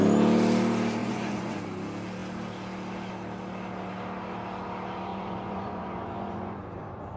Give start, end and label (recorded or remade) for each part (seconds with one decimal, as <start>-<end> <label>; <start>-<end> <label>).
0.0-1.0 recorded; 1.0-1.6 remade; 1.6-5.1 recorded; 5.1-7.2 remade